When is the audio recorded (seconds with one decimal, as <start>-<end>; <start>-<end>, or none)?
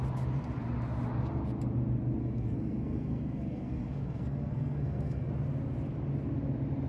0.0-2.2; 5.3-6.9